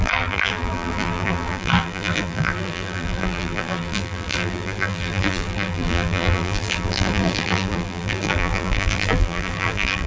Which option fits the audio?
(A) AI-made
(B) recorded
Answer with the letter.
A